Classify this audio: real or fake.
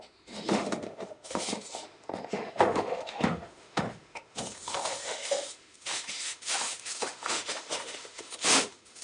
fake